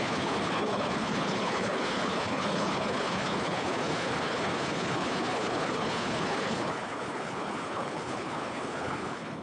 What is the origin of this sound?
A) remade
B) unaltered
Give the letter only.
A